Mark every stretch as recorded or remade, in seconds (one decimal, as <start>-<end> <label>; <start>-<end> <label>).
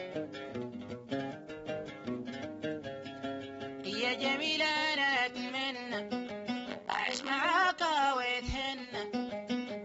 0.0-6.7 recorded; 6.7-7.3 remade; 7.3-9.8 recorded